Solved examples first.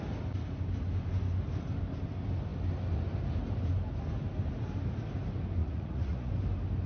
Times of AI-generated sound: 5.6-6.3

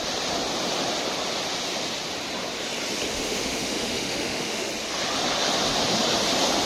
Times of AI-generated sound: 3.1-4.7

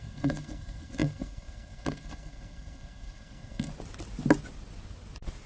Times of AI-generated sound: 0.0-3.7

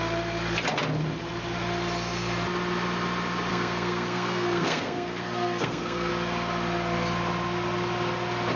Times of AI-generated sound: 3.5-6.1

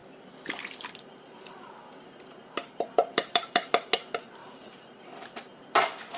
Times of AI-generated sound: 0.0-3.7; 4.4-5.4